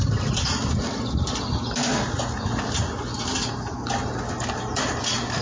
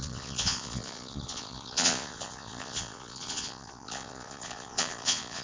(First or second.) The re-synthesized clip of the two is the second